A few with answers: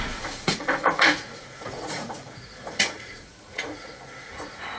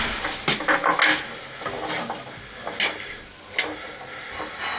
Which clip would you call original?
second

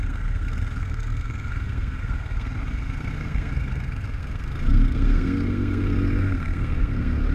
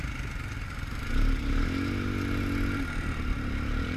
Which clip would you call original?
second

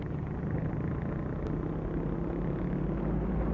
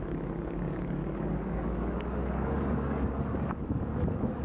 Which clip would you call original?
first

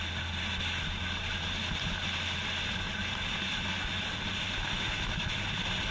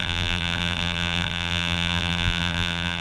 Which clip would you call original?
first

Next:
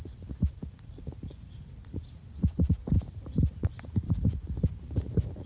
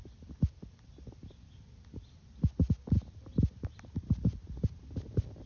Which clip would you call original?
second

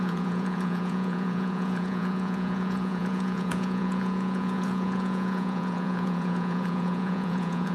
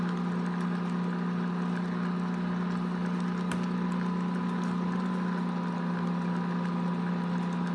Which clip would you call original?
second